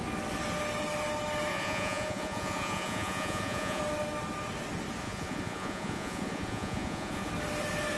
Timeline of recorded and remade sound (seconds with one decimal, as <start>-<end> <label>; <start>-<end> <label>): 0.0-1.5 recorded; 1.5-3.8 remade; 3.8-5.0 recorded; 5.0-7.3 remade; 7.3-8.0 recorded